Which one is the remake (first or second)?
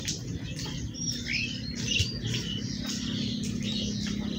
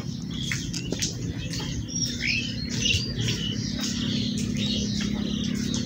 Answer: first